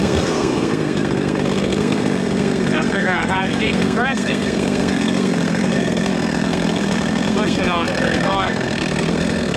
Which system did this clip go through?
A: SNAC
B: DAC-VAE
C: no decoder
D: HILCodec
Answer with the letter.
A